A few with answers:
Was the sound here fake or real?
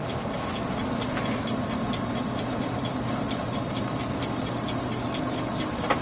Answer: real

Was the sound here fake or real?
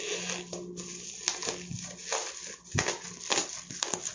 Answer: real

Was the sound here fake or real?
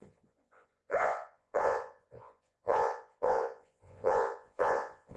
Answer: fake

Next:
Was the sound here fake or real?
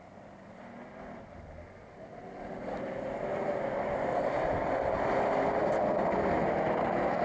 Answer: real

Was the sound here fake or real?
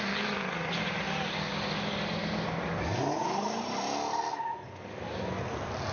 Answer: real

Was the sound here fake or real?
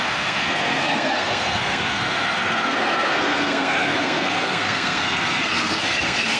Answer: fake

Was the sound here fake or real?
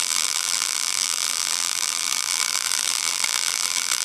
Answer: fake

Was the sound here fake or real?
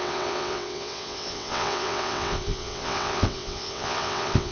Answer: fake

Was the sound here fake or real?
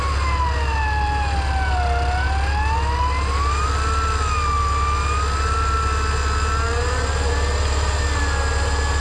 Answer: real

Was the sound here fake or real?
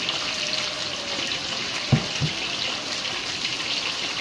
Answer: real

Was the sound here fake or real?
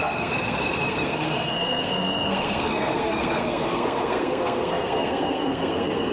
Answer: fake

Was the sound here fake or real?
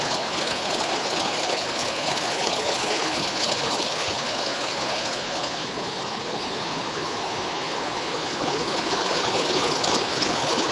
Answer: fake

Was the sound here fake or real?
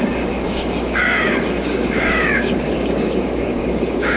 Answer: fake